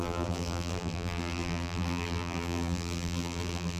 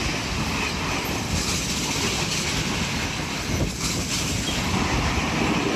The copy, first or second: first